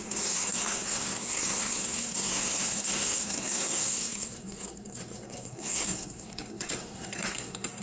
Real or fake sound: fake